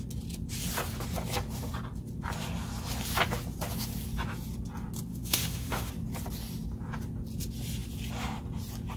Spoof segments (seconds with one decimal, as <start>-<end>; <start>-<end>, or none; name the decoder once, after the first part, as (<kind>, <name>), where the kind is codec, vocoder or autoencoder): 5.1-5.9 (autoencoder, DAC-VAE)

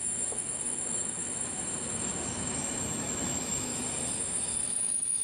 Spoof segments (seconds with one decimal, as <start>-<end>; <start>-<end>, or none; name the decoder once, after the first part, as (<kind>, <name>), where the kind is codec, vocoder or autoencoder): 0.0-3.7 (autoencoder, DAC-VAE); 4.2-5.2

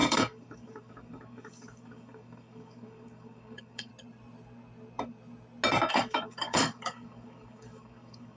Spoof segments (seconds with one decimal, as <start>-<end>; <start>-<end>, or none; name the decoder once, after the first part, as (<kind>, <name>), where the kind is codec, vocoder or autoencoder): 0.0-3.9 (codec, DAC); 5.9-8.4